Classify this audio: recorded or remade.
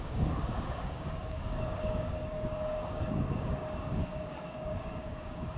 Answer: remade